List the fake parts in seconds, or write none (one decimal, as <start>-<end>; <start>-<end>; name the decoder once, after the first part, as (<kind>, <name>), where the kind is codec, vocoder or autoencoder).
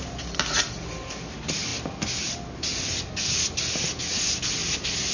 none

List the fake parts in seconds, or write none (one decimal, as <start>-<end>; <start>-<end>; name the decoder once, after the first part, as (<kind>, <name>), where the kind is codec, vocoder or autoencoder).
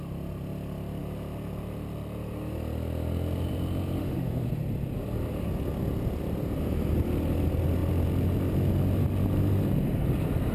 4.0-4.5 (autoencoder, DAC-VAE)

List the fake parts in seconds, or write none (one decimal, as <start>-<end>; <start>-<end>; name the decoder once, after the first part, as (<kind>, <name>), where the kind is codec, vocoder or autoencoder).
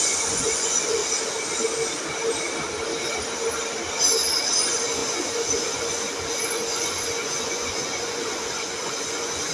0.0-1.0 (vocoder, Vocos); 4.6-9.5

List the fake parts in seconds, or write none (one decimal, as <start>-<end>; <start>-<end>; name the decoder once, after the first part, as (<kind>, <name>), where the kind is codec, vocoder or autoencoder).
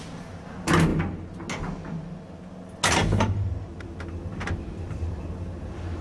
none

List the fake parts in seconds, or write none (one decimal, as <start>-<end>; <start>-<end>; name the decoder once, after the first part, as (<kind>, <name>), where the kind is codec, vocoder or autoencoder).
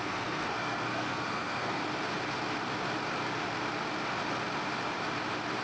0.0-1.8 (codec, SNAC)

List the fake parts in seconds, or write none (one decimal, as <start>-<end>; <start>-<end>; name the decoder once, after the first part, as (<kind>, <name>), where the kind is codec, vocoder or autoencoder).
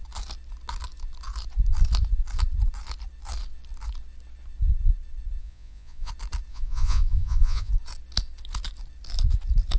5.4-6.1 (vocoder, Vocos); 6.5-7.7